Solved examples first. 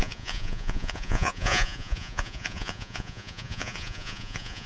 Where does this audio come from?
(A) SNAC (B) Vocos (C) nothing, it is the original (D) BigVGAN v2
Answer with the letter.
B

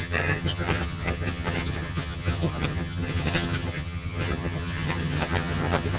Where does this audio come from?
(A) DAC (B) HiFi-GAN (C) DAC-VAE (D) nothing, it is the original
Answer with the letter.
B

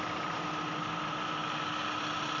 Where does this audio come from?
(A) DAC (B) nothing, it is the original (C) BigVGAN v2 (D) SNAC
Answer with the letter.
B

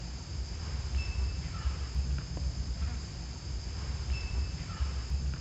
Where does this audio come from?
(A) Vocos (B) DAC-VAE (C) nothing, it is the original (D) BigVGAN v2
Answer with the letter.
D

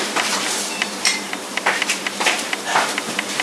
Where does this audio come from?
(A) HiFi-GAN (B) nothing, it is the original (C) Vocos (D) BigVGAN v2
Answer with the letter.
D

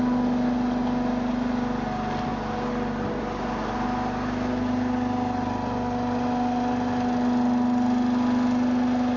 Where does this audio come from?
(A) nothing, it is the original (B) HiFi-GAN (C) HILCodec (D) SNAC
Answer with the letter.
A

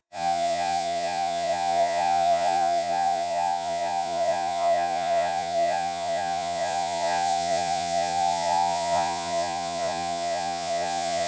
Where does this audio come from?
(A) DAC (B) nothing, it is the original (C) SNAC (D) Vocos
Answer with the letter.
D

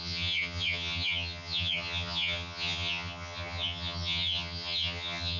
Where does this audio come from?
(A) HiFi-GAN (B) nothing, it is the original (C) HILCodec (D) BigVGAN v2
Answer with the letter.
A